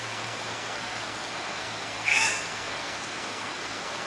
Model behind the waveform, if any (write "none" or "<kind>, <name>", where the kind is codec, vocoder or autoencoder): codec, SNAC